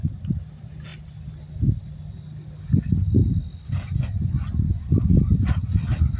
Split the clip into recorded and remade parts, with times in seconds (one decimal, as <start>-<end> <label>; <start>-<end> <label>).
0.0-6.2 recorded